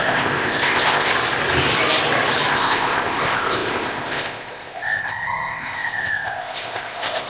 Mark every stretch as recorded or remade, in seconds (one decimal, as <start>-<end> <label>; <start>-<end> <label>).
0.0-1.1 remade; 1.1-2.5 recorded; 2.5-7.3 remade